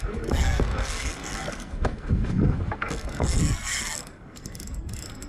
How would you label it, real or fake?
fake